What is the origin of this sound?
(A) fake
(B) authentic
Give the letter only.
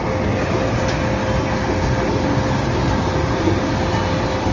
B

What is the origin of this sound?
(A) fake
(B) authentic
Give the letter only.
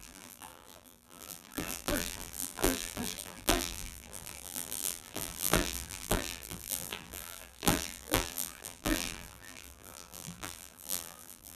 A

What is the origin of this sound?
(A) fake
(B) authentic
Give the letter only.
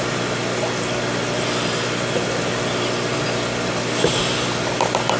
B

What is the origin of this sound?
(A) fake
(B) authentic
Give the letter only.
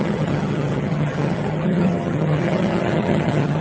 A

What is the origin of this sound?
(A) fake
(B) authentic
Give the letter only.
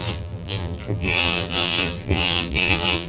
A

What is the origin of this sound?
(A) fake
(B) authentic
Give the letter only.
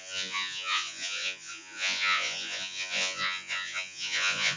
A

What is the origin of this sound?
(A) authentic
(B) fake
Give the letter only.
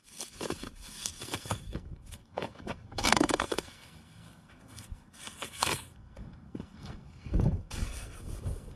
B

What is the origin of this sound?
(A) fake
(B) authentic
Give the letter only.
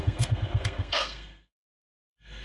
A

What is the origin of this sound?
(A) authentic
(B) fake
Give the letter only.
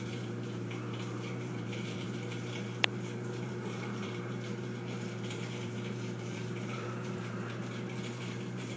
B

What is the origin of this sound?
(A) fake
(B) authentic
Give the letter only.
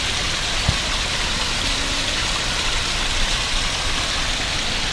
B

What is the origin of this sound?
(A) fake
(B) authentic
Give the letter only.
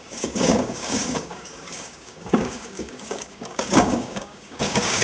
A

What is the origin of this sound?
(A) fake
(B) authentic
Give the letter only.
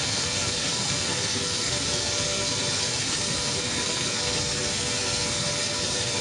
A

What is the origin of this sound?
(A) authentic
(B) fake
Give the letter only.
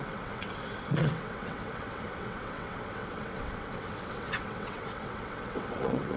B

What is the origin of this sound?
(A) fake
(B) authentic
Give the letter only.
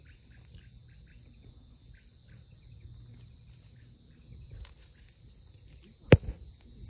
B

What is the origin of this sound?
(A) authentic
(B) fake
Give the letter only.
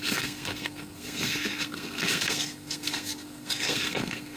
B